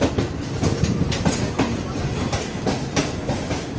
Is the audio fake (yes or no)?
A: no